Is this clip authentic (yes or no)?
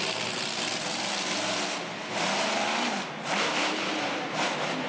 yes